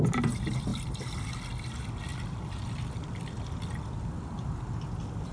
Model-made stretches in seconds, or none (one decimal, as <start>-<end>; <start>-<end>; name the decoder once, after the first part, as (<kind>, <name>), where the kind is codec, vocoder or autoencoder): none